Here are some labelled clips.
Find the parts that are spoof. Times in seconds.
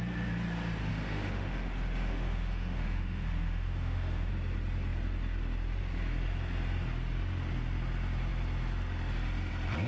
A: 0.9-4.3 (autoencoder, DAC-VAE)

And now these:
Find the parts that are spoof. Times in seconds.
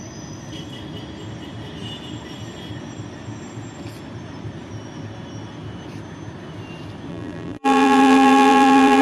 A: 7.1-9.0 (vocoder, BigVGAN v2)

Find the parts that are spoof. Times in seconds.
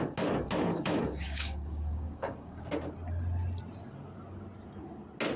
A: 0.7-2.7 (codec, DAC)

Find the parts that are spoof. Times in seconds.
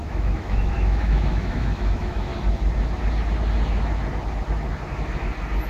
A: 0.0-2.3 (autoencoder, DAC-VAE)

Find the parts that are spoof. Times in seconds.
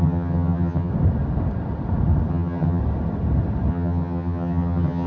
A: 0.0-0.9 (vocoder, HiFi-GAN); 2.3-2.8; 3.7-5.1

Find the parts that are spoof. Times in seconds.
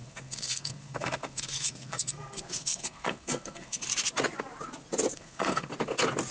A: 0.0-3.8 (codec, SNAC); 5.1-5.7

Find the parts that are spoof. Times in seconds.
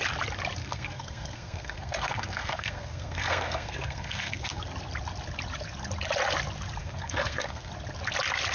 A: 0.6-4.6 (codec, SNAC); 6.8-7.7